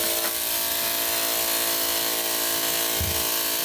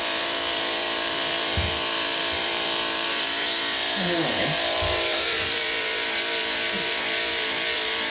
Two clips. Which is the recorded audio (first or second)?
first